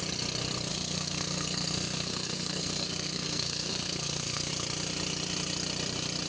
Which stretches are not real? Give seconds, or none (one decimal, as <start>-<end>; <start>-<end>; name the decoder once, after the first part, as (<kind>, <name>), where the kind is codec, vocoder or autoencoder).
0.7-4.5 (codec, SNAC)